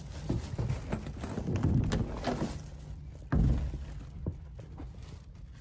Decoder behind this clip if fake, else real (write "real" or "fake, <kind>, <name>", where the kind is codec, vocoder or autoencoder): real